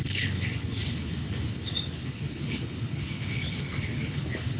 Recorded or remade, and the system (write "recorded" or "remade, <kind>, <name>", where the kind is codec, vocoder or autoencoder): remade, codec, HILCodec